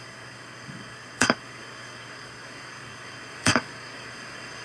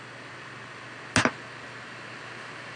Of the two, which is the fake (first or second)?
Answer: first